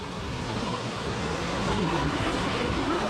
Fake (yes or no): yes